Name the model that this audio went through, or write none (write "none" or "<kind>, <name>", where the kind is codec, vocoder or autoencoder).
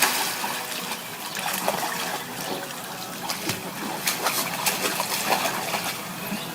none